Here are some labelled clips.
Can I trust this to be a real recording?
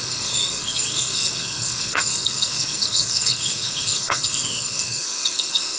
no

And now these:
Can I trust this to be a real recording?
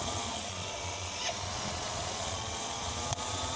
no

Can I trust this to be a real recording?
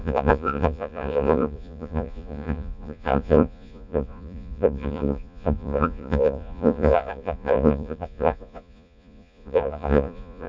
no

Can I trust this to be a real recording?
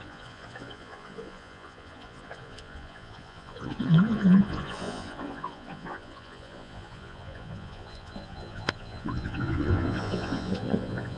no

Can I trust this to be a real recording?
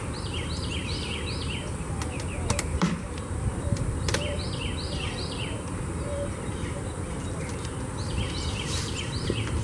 no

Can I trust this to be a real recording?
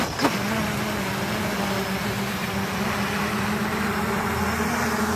yes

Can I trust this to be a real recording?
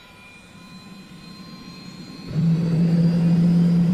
no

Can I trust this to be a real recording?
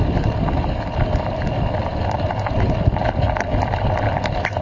yes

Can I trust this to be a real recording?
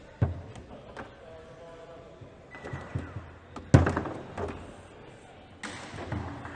yes